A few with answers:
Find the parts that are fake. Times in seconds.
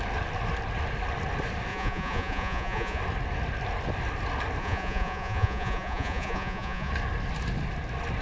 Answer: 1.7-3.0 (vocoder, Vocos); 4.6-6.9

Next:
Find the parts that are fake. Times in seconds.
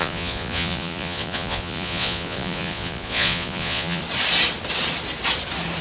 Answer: 0.0-4.0 (vocoder, Vocos)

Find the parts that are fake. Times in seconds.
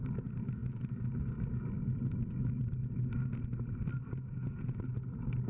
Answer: 4.3-4.9 (vocoder, Vocos)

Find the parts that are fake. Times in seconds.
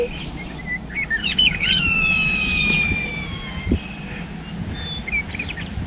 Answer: 1.2-3.6 (vocoder, Vocos)